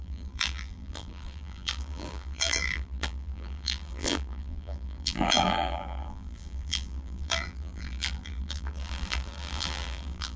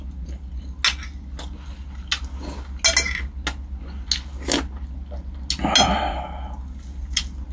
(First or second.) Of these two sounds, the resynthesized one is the first